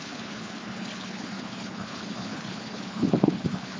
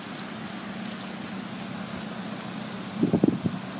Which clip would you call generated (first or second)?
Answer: first